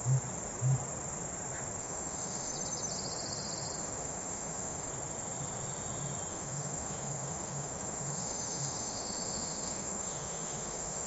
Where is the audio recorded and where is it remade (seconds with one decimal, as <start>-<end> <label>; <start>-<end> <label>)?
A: 0.0-1.8 recorded; 1.8-2.5 remade; 2.5-3.8 recorded; 3.8-4.9 remade; 4.9-6.3 recorded; 6.3-11.1 remade